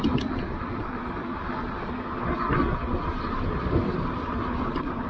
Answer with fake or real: real